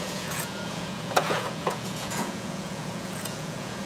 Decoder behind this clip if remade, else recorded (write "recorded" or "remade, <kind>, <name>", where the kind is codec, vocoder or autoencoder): remade, vocoder, Vocos